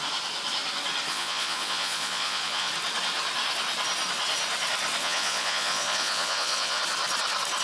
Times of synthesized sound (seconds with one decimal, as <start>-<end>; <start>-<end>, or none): 1.1-2.7; 5.0-6.8